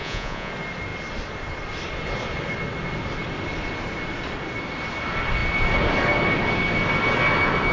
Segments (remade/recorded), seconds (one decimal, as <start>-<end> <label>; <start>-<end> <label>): 0.0-0.5 remade; 0.5-7.7 recorded